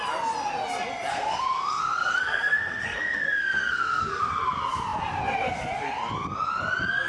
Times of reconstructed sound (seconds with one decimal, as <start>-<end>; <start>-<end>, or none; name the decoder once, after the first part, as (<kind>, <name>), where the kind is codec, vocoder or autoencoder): 1.1-4.3 (codec, SNAC)